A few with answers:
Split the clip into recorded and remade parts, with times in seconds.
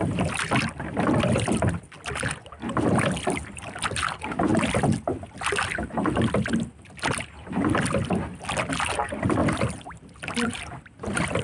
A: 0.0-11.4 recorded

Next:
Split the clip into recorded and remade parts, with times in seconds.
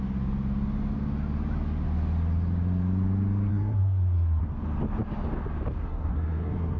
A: 0.0-3.5 recorded; 3.5-4.4 remade; 4.4-5.8 recorded; 5.8-6.8 remade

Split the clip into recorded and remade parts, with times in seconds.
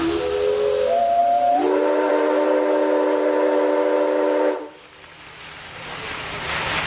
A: 0.0-6.9 recorded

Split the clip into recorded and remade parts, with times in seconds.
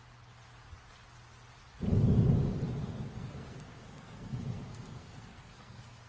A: 0.0-2.8 recorded; 2.8-6.1 remade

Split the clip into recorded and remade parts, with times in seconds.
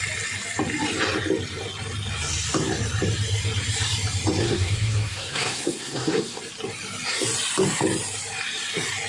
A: 0.0-4.4 recorded; 4.4-6.4 remade; 6.4-9.1 recorded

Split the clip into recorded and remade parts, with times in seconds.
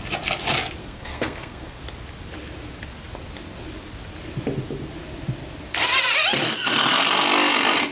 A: 0.0-0.8 recorded; 0.8-1.8 remade; 1.8-7.9 recorded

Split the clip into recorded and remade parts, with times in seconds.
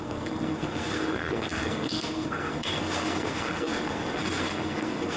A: 0.0-5.2 remade